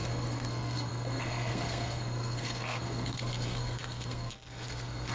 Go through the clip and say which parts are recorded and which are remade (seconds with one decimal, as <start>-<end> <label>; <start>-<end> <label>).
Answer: 0.0-5.1 remade